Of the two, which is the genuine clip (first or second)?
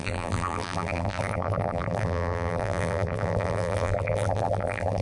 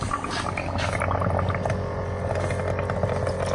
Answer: second